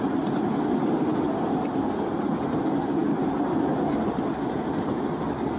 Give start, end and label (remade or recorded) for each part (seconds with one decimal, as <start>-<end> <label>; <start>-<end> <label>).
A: 0.0-5.6 recorded